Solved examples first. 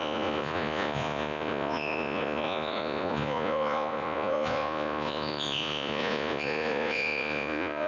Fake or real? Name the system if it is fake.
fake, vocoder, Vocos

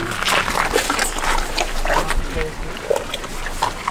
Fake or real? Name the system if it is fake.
real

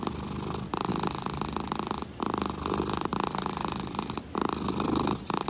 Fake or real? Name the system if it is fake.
real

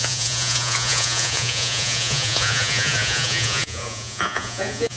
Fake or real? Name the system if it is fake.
fake, vocoder, Vocos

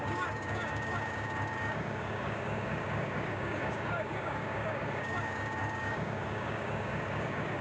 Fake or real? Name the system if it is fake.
fake, codec, DAC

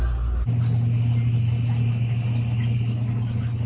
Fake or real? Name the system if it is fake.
real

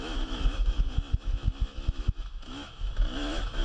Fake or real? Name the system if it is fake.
fake, autoencoder, DAC-VAE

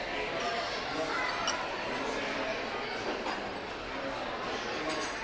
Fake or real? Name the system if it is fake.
real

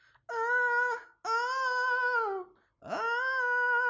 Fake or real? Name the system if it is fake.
real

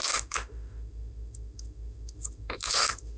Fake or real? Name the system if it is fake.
fake, autoencoder, DAC-VAE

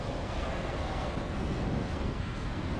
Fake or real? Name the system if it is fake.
fake, codec, SNAC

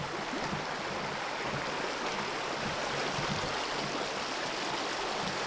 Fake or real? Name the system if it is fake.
real